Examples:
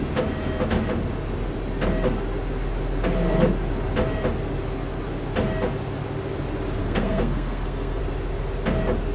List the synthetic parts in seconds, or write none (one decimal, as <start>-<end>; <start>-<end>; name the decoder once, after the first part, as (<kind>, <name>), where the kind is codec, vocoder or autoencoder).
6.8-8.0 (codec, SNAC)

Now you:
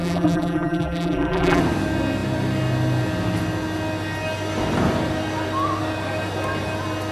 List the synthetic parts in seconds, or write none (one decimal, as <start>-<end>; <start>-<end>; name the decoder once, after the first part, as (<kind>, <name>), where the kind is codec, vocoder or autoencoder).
0.0-1.6 (vocoder, BigVGAN v2)

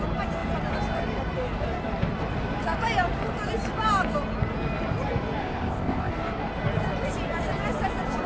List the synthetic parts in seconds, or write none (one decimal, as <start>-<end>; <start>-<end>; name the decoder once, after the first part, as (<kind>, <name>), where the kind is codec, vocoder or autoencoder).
5.4-6.1 (codec, ZipCodec)

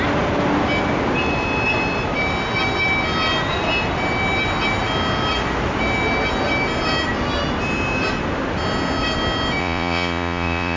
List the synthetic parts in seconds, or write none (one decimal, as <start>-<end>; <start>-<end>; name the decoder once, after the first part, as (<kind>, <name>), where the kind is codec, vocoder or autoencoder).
9.6-10.8 (vocoder, Vocos)